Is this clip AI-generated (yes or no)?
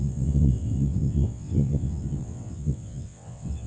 yes